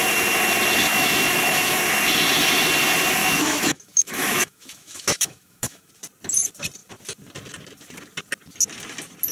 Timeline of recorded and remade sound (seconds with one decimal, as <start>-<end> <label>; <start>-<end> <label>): 0.0-0.9 recorded; 0.9-1.8 remade; 1.8-3.2 recorded; 3.2-5.9 remade; 5.9-9.3 recorded